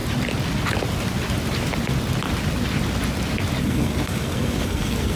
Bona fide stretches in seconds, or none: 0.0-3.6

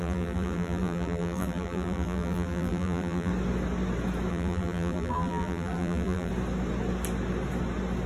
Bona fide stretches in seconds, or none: 3.3-4.3; 6.3-8.1

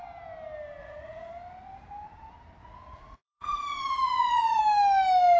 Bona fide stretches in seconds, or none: 0.0-0.8; 1.3-2.6; 4.6-5.4

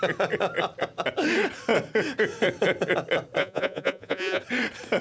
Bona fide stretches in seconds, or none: 0.0-3.4; 4.4-5.0